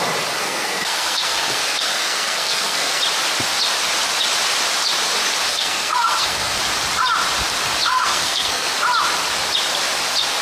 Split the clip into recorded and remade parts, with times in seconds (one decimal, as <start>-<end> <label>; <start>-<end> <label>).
0.0-0.4 recorded; 0.4-3.0 remade; 3.0-5.5 recorded; 5.5-6.6 remade; 6.6-7.9 recorded; 7.9-8.7 remade; 8.7-10.4 recorded